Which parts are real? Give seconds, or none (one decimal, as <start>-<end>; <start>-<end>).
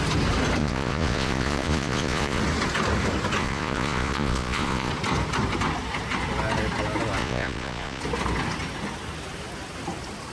0.0-0.6; 2.4-3.4; 4.9-7.2; 8.0-10.3